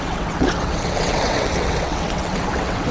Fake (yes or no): yes